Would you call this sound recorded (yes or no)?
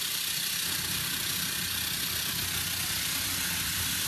yes